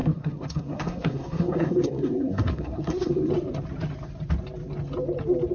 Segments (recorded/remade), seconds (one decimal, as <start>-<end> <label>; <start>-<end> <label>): 0.0-3.3 remade; 3.3-5.5 recorded